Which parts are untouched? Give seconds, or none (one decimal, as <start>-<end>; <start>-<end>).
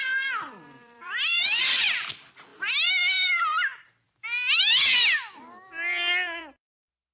2.1-7.1